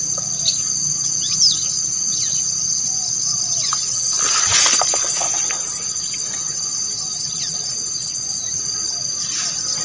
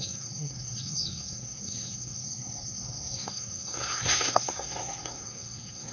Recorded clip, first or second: first